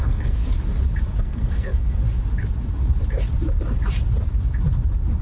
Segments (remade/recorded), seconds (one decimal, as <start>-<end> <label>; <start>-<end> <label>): 0.0-0.4 remade; 0.4-1.2 recorded; 1.2-2.0 remade; 2.0-5.2 recorded